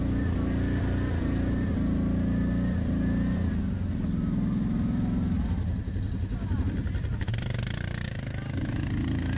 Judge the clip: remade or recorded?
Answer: recorded